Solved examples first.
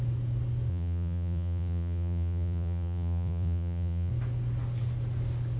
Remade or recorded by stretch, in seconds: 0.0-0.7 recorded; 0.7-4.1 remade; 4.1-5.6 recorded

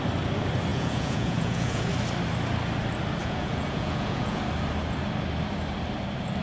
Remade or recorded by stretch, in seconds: 0.0-0.7 recorded; 0.7-1.9 remade; 1.9-3.2 recorded; 3.2-4.4 remade; 4.4-6.4 recorded

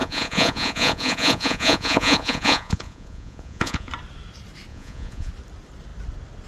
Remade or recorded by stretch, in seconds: 0.0-3.9 remade; 3.9-4.7 recorded; 4.7-5.3 remade; 5.3-6.5 recorded

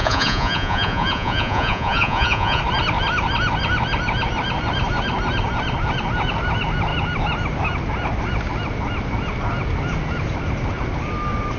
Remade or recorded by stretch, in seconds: 0.0-2.6 remade; 2.6-11.6 recorded

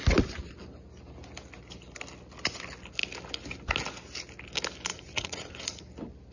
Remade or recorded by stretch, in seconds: 0.0-4.9 recorded; 4.9-5.8 remade; 5.8-6.3 recorded

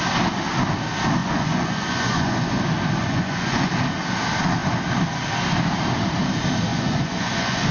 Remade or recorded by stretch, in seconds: 0.0-1.2 recorded; 1.2-2.5 remade; 2.5-3.0 recorded; 3.0-3.7 remade; 3.7-6.7 recorded; 6.7-7.7 remade

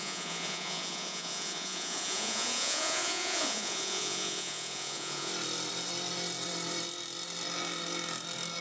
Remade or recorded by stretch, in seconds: 0.0-5.3 remade; 5.3-8.6 recorded